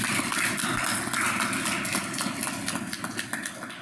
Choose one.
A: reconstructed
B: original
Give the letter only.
B